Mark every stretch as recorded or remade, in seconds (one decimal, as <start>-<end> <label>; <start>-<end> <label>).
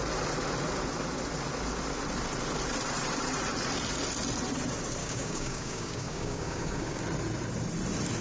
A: 0.0-5.0 recorded; 5.0-7.0 remade; 7.0-8.2 recorded